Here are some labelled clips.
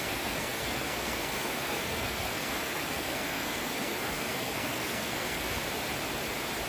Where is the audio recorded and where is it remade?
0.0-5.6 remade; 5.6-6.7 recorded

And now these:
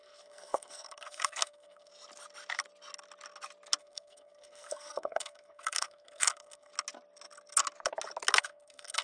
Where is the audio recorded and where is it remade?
0.0-1.9 remade; 1.9-3.8 recorded; 3.8-6.7 remade; 6.7-8.4 recorded; 8.4-9.0 remade

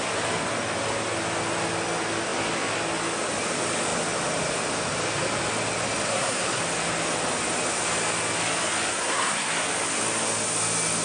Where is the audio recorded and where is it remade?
0.0-6.1 recorded; 6.1-6.6 remade; 6.6-8.9 recorded; 8.9-9.5 remade; 9.5-11.0 recorded

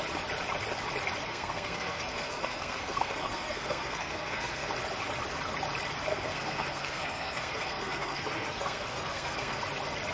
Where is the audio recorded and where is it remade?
0.0-1.2 recorded; 1.2-4.7 remade; 4.7-6.1 recorded; 6.1-9.6 remade; 9.6-10.1 recorded

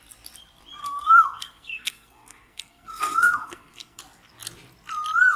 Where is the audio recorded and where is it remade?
0.0-0.8 recorded; 0.8-4.0 remade; 4.0-5.4 recorded

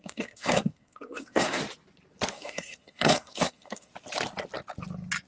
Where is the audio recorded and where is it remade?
0.0-1.6 remade; 1.6-2.3 recorded; 2.3-3.9 remade; 3.9-5.3 recorded

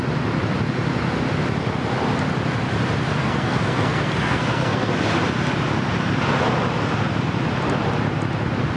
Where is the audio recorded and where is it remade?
0.0-3.2 recorded; 3.2-4.9 remade; 4.9-8.8 recorded

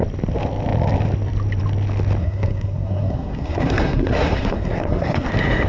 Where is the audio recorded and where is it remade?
0.0-2.2 recorded; 2.2-5.3 remade; 5.3-5.7 recorded